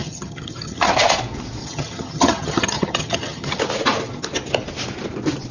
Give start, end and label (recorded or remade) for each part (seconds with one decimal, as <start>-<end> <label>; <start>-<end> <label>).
0.0-0.9 remade; 0.9-1.6 recorded; 1.6-3.6 remade; 3.6-5.5 recorded